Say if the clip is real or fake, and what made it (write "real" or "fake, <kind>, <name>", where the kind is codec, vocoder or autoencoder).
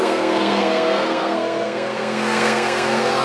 fake, codec, SNAC